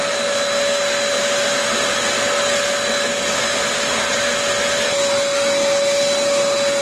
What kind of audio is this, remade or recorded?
recorded